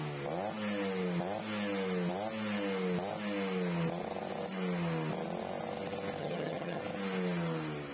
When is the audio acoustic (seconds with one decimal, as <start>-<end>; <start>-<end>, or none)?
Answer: 0.0-6.2; 6.8-7.9